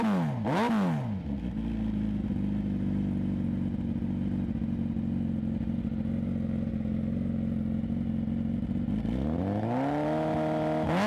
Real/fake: real